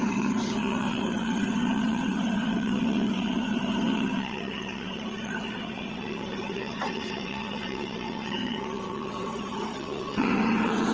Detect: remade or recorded remade